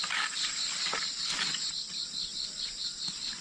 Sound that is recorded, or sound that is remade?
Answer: recorded